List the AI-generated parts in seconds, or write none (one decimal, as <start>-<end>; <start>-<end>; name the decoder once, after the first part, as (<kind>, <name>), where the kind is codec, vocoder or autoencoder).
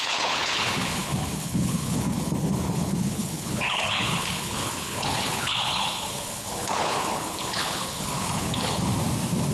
0.0-8.9 (codec, HILCodec)